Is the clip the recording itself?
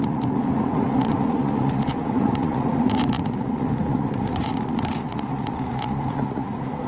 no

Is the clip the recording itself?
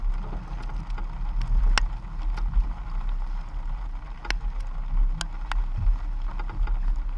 yes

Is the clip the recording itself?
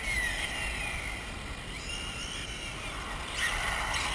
yes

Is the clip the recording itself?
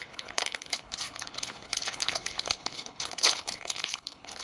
no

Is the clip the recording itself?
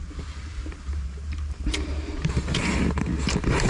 no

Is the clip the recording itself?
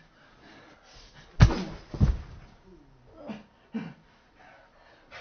yes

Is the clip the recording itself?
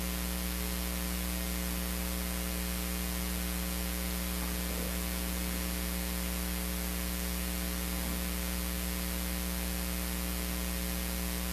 yes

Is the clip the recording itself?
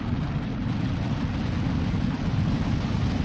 yes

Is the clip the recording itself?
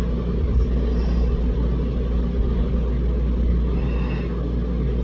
yes